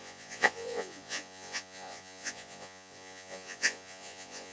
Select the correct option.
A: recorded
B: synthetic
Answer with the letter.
B